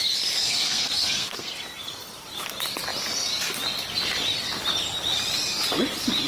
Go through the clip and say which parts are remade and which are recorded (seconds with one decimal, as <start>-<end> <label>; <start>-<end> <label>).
0.0-0.4 recorded; 0.4-1.5 remade; 1.5-6.3 recorded

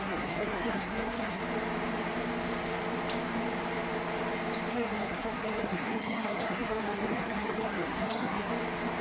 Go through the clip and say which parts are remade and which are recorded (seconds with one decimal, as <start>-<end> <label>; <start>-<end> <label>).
0.0-1.4 remade; 1.4-4.7 recorded; 4.7-8.5 remade; 8.5-9.0 recorded

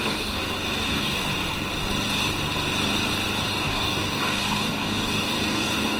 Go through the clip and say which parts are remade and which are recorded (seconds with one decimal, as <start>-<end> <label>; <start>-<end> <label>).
0.0-0.4 remade; 0.4-0.9 recorded; 0.9-1.3 remade; 1.3-3.5 recorded; 3.5-6.0 remade

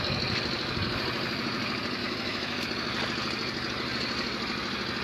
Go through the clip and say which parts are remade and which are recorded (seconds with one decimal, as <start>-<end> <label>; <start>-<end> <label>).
0.0-2.0 recorded; 2.0-2.6 remade; 2.6-5.0 recorded

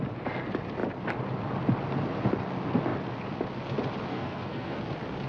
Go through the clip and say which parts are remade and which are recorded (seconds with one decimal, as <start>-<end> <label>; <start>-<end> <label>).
0.0-4.1 recorded; 4.1-4.8 remade; 4.8-5.3 recorded